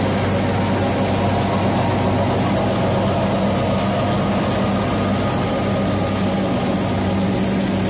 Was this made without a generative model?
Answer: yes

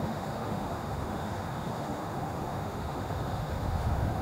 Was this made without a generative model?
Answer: no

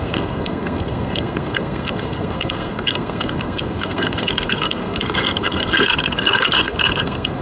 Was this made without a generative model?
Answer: no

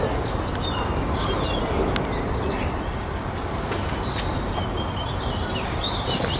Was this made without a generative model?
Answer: yes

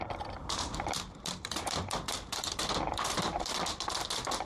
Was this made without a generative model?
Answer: yes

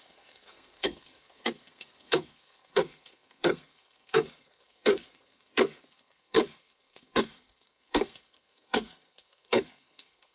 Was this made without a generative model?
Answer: no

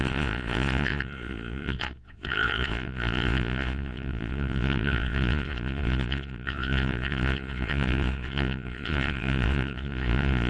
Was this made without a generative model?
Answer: no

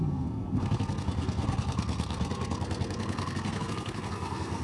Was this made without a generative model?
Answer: no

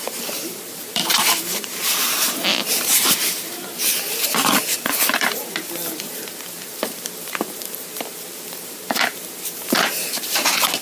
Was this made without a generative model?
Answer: no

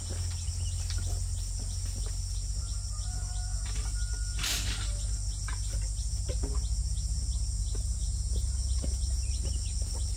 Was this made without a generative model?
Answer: yes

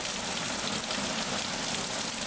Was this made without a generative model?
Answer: yes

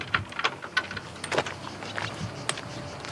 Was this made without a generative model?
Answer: yes